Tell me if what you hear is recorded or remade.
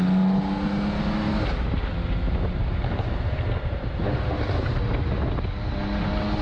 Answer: recorded